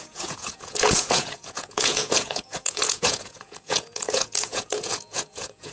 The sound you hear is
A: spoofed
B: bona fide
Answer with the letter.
A